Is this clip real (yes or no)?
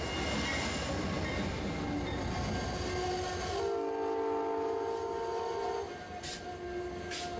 yes